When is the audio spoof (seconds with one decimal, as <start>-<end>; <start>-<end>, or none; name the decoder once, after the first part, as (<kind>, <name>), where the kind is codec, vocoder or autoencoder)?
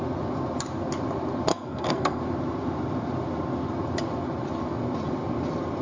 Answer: 1.5-2.2 (codec, SNAC)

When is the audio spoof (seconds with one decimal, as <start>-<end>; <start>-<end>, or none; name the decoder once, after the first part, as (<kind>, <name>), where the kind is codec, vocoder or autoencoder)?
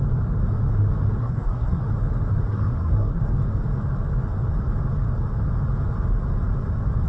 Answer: 1.2-1.8 (codec, SNAC); 2.5-3.2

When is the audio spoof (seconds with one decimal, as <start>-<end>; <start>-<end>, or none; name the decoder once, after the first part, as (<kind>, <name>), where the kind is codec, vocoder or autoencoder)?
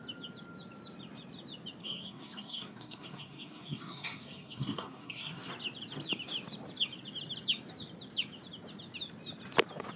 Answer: 1.8-5.5 (codec, SNAC)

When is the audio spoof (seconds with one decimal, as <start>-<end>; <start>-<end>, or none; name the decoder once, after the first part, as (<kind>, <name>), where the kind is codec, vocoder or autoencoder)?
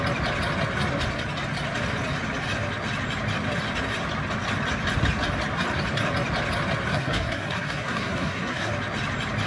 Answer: 6.9-8.7 (codec, SNAC)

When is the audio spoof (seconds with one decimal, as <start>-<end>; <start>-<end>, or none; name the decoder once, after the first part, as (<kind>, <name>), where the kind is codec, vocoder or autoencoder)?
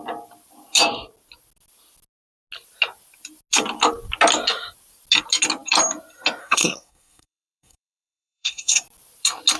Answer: 6.4-8.8 (codec, SNAC)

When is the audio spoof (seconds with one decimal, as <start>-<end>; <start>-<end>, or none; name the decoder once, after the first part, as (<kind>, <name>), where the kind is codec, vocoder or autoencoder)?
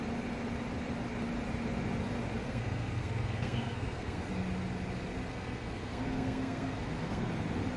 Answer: 2.4-4.3 (codec, SNAC); 5.3-7.3